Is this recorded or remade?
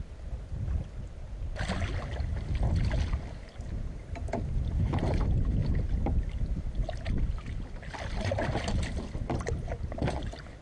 recorded